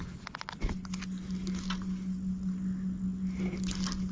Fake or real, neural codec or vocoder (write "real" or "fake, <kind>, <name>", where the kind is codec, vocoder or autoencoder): real